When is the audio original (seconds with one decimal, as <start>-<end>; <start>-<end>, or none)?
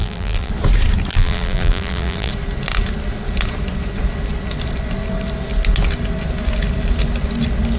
0.5-1.1; 2.3-7.8